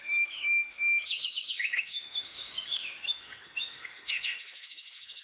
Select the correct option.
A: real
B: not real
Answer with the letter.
B